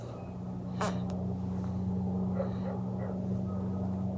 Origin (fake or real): real